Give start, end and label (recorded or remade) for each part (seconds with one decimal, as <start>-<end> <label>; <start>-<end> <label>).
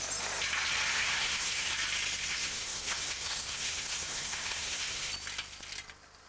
0.0-0.9 recorded; 0.9-1.7 remade; 1.7-2.2 recorded; 2.2-5.1 remade; 5.1-6.3 recorded